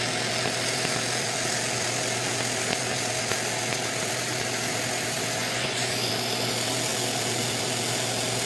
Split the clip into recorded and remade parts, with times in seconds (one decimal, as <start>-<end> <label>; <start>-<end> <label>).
0.0-5.4 recorded; 5.4-6.1 remade; 6.1-8.5 recorded